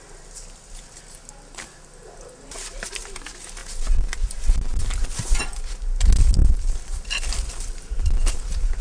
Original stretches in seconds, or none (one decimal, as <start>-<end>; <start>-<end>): 0.0-8.8